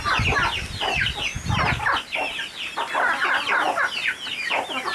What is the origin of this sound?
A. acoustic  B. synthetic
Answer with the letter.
A